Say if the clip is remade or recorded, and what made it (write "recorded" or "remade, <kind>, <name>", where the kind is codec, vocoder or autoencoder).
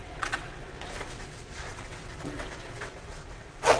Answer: remade, vocoder, WaveNeXt